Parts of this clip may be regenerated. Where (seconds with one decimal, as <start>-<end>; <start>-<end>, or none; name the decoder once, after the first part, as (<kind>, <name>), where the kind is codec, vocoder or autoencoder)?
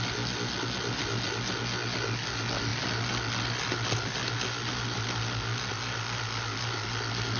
none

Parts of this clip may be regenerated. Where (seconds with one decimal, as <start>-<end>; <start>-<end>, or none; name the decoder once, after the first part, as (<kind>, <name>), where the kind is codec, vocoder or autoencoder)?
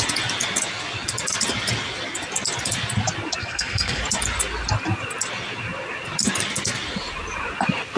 3.4-4.0 (codec, SNAC)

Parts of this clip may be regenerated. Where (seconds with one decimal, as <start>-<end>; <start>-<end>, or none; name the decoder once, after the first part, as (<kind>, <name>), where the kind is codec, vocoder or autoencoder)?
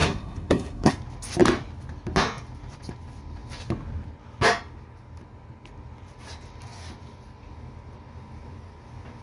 0.0-0.9 (codec, SNAC)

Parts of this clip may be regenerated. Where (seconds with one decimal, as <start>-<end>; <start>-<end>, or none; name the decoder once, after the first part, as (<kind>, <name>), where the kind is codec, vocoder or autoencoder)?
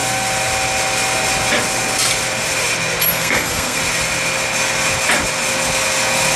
3.1-3.8 (codec, SNAC)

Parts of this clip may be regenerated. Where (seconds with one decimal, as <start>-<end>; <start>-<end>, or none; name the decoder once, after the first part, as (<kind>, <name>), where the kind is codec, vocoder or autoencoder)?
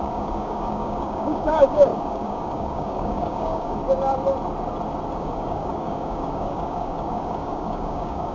0.0-3.8 (codec, DAC); 5.2-8.3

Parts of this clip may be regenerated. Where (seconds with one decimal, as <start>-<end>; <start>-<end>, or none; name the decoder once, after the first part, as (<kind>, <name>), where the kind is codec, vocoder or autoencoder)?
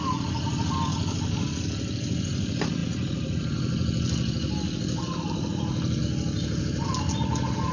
none